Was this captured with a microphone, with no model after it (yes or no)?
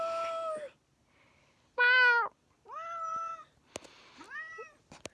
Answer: yes